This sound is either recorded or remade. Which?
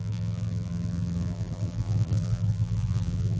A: remade